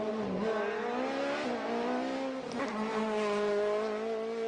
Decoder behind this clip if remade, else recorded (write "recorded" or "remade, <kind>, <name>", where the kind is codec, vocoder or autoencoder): recorded